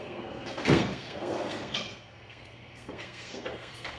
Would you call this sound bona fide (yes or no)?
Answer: no